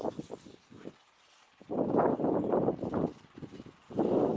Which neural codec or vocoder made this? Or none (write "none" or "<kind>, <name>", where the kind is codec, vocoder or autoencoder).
none